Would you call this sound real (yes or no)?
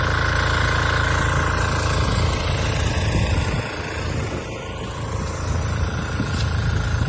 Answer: yes